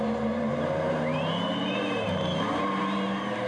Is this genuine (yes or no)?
no